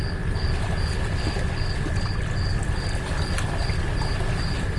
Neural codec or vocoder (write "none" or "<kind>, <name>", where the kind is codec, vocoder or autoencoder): none